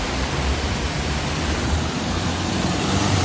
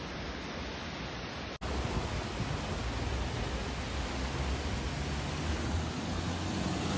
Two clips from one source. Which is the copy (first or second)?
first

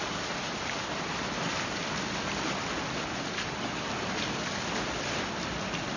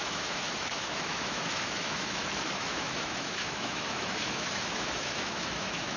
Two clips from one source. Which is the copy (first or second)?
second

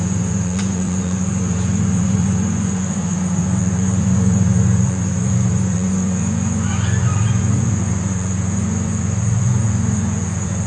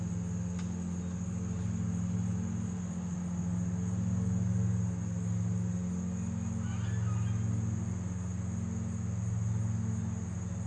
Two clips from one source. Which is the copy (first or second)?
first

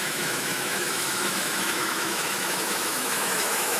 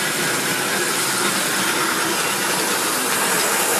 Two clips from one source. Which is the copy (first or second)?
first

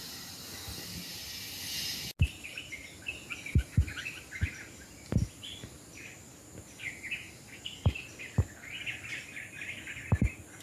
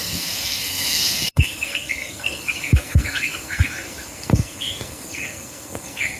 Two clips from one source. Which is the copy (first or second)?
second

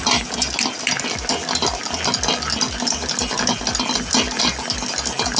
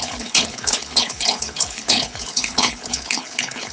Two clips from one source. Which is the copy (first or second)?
second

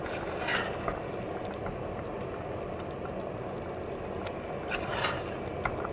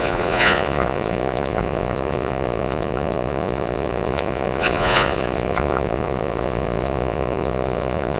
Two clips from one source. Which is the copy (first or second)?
second